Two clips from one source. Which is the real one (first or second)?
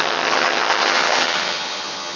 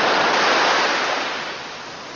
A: second